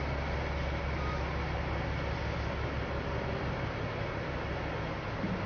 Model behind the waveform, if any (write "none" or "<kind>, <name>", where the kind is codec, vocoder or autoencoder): none